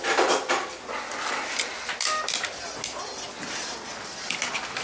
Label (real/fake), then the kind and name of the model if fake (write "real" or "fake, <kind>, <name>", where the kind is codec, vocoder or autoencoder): real